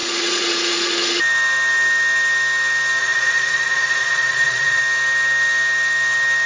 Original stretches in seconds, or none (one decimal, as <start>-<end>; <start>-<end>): 1.2-3.0; 4.8-6.5